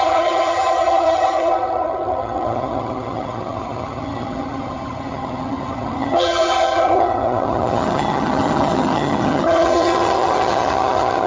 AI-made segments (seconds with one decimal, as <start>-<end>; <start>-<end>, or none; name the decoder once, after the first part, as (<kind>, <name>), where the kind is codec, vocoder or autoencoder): 0.0-11.3 (vocoder, HiFi-GAN)

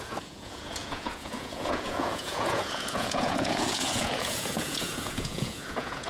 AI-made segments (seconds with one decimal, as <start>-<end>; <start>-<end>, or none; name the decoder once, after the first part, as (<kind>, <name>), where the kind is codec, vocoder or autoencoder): 0.0-6.1 (vocoder, Vocos)

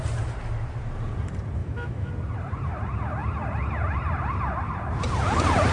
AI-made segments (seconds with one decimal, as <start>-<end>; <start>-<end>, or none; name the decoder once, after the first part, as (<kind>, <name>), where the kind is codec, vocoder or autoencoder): 1.6-2.1 (autoencoder, DAC-VAE)

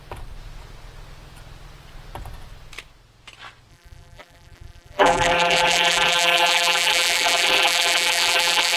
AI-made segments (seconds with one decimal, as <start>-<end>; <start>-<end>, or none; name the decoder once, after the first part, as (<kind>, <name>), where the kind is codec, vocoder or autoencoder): 3.7-8.8 (vocoder, BigVGAN v2)

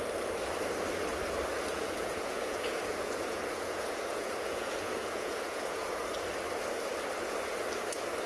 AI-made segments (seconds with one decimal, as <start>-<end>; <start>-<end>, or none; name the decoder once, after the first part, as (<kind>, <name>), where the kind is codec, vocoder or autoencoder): 1.7-6.0 (vocoder, Vocos)

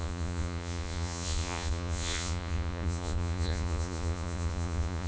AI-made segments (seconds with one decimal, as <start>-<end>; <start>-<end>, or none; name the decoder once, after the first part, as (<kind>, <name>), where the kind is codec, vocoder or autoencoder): 0.0-5.1 (vocoder, Vocos)